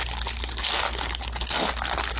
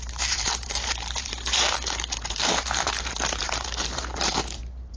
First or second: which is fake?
second